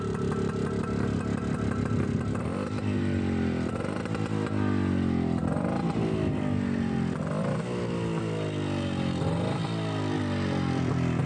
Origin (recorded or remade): recorded